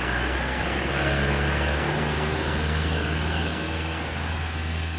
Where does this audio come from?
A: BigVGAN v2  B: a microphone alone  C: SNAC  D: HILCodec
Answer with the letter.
C